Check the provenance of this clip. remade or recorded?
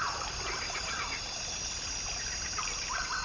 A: recorded